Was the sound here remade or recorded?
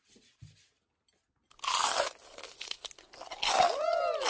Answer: recorded